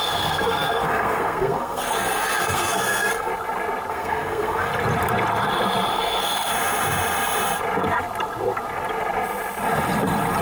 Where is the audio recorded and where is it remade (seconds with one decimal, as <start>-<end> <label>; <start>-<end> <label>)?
0.0-3.3 remade; 3.3-3.9 recorded; 3.9-4.7 remade; 4.7-5.9 recorded; 5.9-6.5 remade; 6.5-10.4 recorded